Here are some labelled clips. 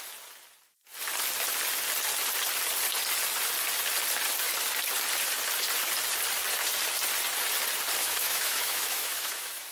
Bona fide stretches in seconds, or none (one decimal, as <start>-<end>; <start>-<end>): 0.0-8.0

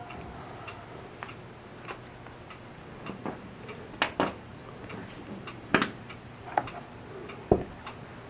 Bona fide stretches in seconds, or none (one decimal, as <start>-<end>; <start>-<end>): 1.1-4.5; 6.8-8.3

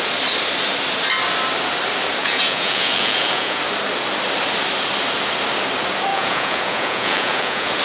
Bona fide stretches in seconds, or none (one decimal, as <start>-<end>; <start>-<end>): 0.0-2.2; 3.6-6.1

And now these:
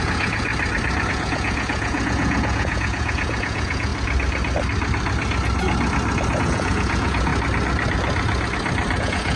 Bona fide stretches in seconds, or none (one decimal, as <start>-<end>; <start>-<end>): 0.5-1.1; 3.9-6.4; 7.3-9.0